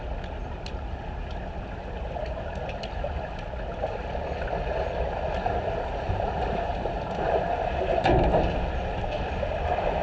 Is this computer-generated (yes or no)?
no